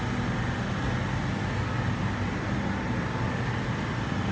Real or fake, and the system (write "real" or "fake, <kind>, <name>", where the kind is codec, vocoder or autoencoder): real